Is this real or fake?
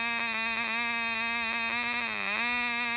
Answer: real